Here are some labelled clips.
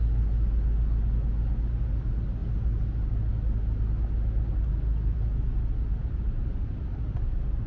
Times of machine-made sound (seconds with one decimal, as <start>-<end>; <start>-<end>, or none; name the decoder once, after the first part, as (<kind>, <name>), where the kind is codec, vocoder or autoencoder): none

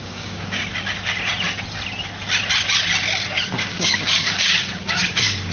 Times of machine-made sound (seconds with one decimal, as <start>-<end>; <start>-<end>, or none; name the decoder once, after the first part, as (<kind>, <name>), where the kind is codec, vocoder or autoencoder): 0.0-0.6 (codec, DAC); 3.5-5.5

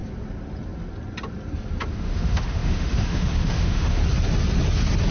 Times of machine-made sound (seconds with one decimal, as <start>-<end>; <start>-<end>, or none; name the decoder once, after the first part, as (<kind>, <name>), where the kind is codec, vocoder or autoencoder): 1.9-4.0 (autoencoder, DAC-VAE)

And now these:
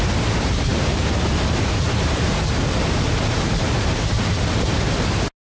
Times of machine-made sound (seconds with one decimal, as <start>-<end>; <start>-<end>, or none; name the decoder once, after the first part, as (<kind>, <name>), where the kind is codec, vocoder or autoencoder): none

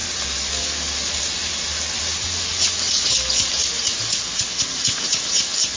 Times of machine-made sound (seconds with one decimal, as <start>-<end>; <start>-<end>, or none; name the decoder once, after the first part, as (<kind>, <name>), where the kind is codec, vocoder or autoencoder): none